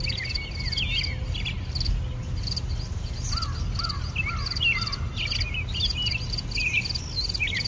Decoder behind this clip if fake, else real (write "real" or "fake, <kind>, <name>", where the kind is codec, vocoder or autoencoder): real